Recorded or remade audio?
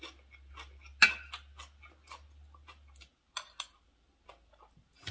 recorded